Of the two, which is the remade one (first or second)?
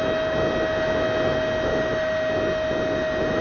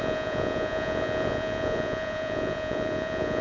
second